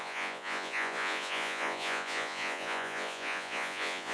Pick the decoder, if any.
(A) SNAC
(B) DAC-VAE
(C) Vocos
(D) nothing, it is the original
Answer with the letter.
C